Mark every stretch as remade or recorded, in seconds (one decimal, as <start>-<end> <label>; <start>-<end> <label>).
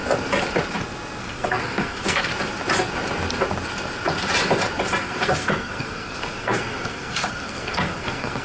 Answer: 0.0-1.2 recorded; 1.2-2.3 remade; 2.3-5.0 recorded; 5.0-8.4 remade